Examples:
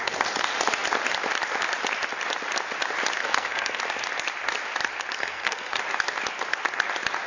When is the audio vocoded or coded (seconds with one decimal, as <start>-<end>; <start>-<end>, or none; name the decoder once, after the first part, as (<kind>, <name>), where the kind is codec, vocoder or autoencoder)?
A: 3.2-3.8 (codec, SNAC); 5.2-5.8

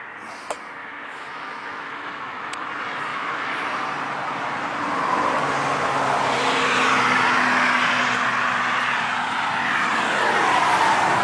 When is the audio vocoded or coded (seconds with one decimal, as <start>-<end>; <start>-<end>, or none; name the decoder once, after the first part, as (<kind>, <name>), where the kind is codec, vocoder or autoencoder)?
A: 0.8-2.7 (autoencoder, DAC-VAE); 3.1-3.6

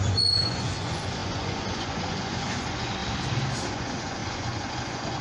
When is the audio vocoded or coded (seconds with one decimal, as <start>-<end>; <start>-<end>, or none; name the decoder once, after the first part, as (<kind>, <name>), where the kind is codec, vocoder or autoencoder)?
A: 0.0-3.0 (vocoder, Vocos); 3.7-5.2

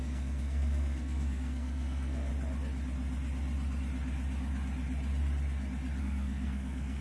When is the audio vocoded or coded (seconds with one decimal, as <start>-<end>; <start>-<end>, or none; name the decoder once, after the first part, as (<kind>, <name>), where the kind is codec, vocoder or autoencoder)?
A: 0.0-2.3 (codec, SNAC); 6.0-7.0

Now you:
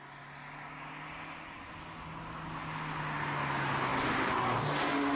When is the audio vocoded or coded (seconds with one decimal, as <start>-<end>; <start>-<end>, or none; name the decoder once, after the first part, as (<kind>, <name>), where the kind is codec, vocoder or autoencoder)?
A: none